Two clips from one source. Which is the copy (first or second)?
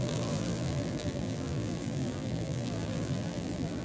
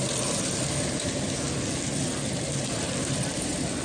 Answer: first